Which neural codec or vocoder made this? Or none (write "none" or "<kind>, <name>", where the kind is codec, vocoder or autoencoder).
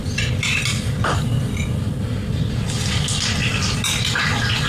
none